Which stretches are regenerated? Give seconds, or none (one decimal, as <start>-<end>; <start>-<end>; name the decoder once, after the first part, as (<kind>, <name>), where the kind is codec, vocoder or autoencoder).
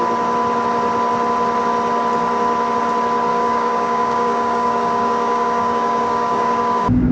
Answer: 3.3-7.1 (codec, DAC)